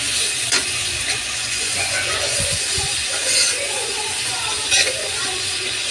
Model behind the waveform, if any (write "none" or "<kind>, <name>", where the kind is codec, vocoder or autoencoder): vocoder, Vocos